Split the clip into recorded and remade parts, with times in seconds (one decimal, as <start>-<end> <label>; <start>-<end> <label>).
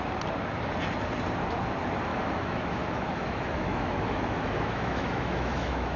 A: 0.0-2.1 recorded; 2.1-6.0 remade